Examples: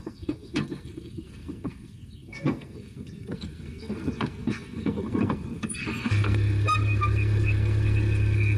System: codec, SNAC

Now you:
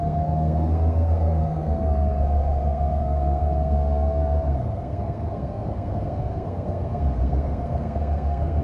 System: codec, SNAC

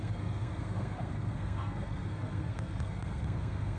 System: codec, SNAC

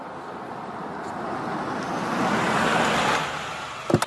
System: none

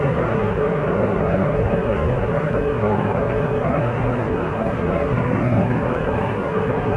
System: codec, SNAC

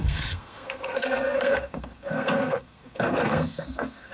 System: codec, SNAC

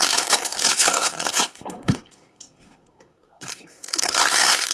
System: codec, SNAC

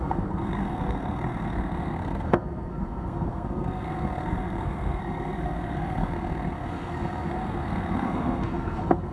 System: codec, SNAC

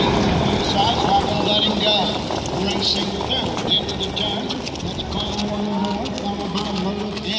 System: none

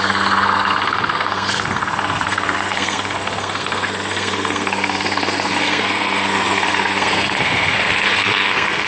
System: codec, SNAC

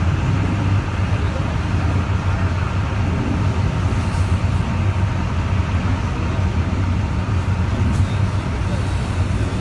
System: none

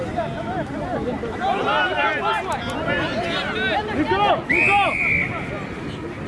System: none